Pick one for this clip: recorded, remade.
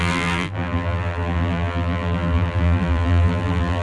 remade